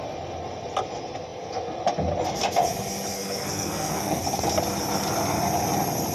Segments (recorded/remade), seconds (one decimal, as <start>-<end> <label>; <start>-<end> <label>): 0.0-3.1 recorded; 3.1-4.2 remade; 4.2-6.1 recorded